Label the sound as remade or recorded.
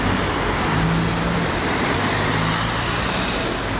recorded